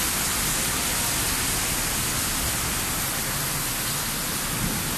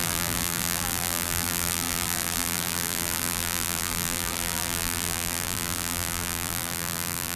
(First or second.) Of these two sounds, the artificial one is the second